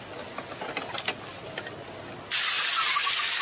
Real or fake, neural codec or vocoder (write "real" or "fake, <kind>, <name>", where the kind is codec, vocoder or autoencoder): real